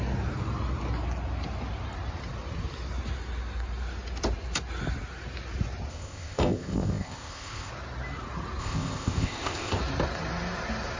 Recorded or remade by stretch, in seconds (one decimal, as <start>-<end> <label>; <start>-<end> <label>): 0.0-5.9 recorded; 5.9-7.7 remade; 7.7-8.6 recorded; 8.6-9.8 remade; 9.8-11.0 recorded

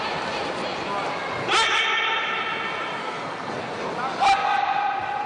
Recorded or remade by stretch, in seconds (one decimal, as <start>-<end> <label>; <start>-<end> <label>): 0.0-3.0 recorded; 3.0-3.6 remade; 3.6-5.3 recorded